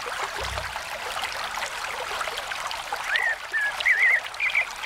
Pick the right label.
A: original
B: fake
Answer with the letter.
A